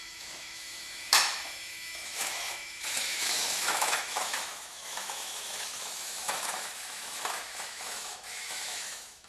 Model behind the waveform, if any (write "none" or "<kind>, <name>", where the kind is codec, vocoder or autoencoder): autoencoder, DAC-VAE